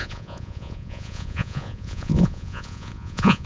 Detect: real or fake fake